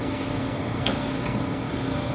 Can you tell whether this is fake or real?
fake